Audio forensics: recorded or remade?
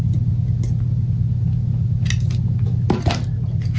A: recorded